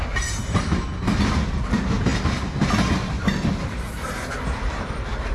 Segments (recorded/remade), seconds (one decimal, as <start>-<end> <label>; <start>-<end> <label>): 0.0-5.3 recorded